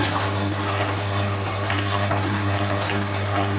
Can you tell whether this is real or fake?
fake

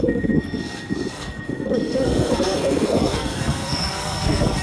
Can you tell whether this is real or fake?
fake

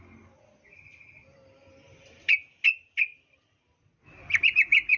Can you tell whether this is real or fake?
real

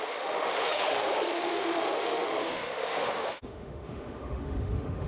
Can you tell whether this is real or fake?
fake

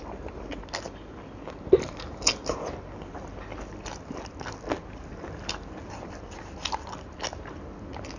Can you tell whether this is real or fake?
real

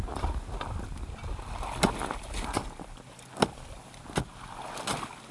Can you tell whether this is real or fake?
real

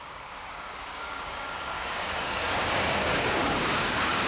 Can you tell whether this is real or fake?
fake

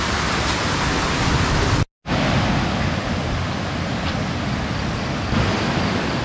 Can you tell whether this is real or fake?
real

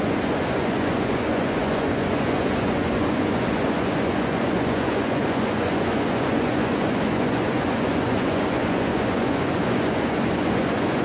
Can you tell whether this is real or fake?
fake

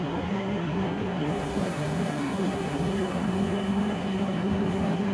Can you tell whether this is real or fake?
fake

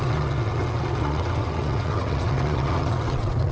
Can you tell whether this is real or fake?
fake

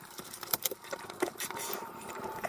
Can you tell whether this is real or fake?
fake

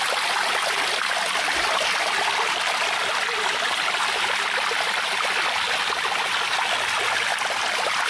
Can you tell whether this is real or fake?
real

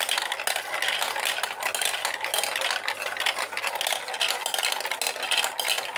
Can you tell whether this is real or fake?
real